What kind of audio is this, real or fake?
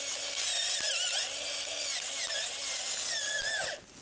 real